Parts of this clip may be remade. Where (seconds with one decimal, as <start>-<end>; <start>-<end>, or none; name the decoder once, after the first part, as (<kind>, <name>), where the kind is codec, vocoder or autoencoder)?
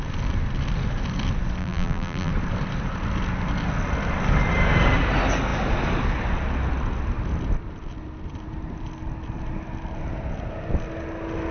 1.6-2.3 (vocoder, BigVGAN v2)